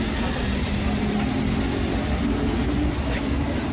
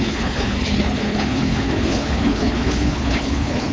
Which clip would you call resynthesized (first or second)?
second